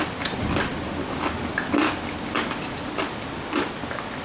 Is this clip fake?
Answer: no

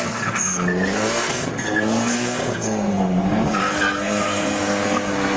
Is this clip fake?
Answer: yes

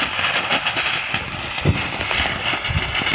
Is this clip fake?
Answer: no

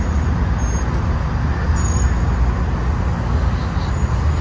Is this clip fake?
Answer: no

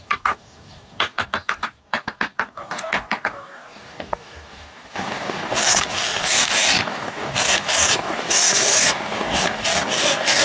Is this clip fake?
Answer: yes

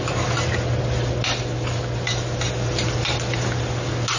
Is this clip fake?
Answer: no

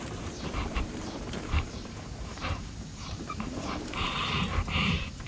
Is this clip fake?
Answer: yes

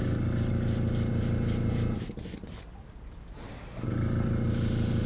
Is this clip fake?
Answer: no